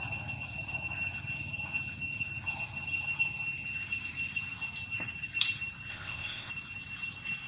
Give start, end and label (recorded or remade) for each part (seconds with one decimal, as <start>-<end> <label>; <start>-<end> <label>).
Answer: 0.0-5.9 recorded; 5.9-6.5 remade; 6.5-7.5 recorded